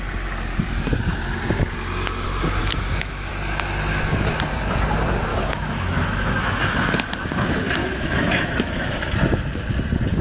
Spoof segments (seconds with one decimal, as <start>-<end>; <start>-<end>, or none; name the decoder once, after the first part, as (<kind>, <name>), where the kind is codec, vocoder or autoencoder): 2.6-3.3 (autoencoder, DAC-VAE); 5.3-7.0; 7.8-9.1